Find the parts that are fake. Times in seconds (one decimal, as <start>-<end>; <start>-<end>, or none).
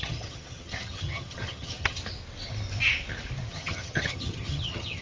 0.0-2.0; 3.5-5.0